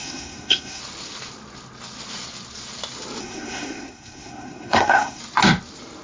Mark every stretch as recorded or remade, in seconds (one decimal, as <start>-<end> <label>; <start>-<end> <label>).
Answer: 0.0-0.8 remade; 0.8-3.2 recorded; 3.2-5.2 remade; 5.2-6.0 recorded